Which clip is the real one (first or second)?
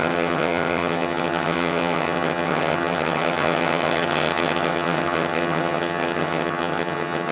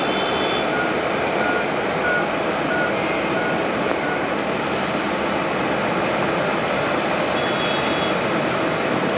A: second